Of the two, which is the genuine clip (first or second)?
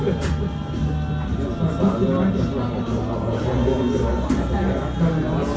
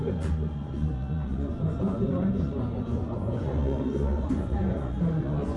first